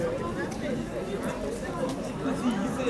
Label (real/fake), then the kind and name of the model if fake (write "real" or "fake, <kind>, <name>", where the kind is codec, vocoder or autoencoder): real